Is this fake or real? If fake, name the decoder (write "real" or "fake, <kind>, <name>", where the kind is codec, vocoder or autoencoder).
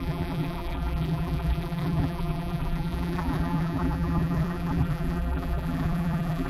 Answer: fake, vocoder, BigVGAN v2